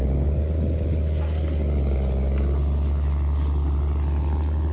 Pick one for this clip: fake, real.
real